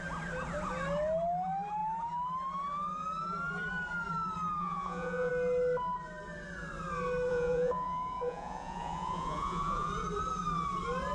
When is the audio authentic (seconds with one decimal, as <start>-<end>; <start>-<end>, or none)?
0.0-4.6; 5.3-7.3; 9.9-11.1